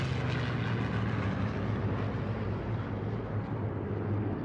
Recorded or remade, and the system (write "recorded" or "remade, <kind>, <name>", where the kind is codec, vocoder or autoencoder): recorded